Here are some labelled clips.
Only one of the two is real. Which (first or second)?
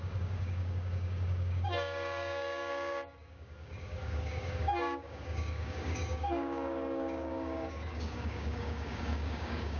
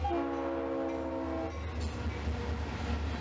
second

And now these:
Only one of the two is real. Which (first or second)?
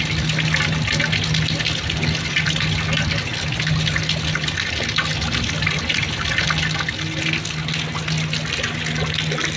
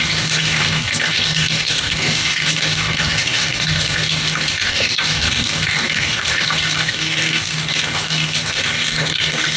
first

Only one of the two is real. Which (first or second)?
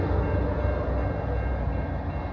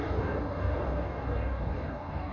first